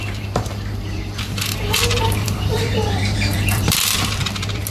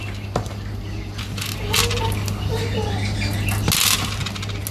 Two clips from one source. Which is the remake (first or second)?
first